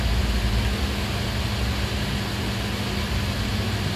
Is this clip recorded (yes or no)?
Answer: yes